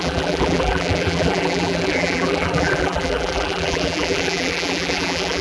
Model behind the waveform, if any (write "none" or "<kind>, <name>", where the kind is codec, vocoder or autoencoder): vocoder, BigVGAN v2